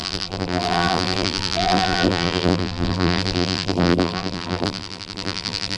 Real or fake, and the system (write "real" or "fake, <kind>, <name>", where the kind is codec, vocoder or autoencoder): fake, vocoder, BigVGAN v2